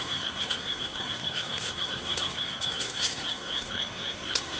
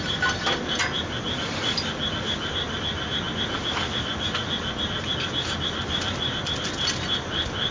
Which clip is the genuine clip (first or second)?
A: second